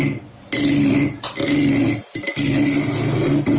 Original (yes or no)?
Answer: yes